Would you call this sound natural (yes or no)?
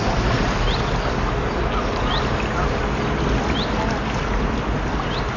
yes